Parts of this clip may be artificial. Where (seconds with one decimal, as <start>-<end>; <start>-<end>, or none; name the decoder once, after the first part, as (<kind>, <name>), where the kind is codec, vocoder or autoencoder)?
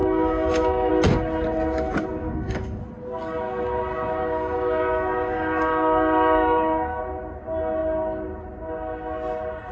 0.0-0.9 (codec, DAC); 2.2-2.8; 4.2-7.0